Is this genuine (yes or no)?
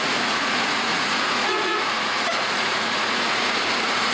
no